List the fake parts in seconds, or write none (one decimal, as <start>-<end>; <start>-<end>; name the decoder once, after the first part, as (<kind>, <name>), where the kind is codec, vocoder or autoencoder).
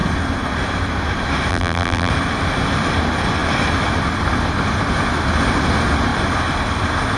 1.5-2.1 (vocoder, BigVGAN v2)